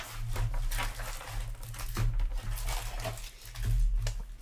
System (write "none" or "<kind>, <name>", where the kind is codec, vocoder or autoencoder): none